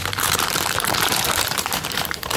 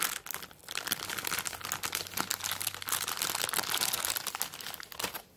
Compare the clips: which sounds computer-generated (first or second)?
first